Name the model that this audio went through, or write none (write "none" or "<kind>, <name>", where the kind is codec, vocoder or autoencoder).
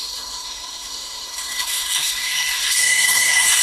codec, SNAC